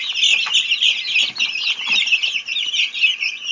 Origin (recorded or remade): recorded